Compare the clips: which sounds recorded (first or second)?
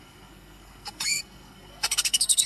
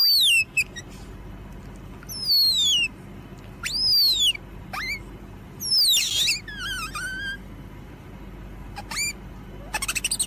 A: second